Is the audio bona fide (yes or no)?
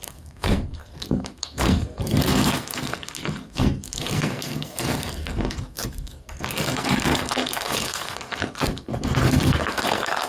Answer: no